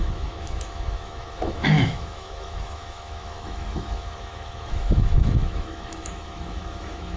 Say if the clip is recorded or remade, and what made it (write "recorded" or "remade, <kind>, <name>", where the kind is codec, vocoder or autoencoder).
remade, autoencoder, DAC-VAE